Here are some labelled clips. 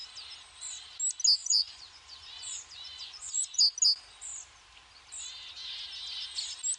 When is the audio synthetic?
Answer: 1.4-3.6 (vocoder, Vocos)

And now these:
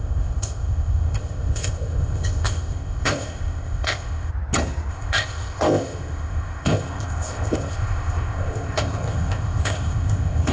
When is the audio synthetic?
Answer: 0.0-4.3 (codec, ZipCodec); 4.9-10.5

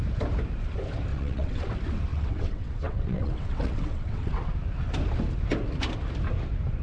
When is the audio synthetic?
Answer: 1.1-1.7 (vocoder, WaveNeXt); 2.1-4.5

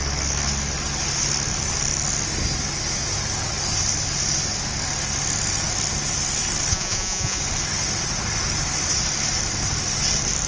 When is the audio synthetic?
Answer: 6.7-7.4 (vocoder, Vocos)

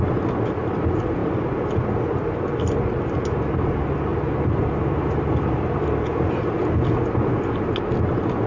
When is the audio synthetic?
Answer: none

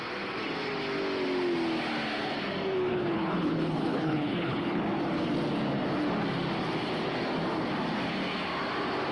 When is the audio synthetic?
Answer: 2.9-4.8 (codec, HILCodec)

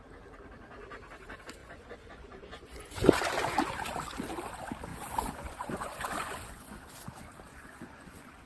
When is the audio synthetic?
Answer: 1.6-3.2 (vocoder, Vocos); 4.9-6.8; 7.5-8.5

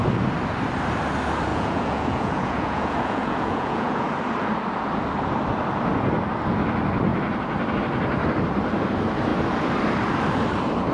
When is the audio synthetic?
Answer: 1.5-4.1 (vocoder, Vocos)